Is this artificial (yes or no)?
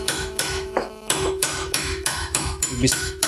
yes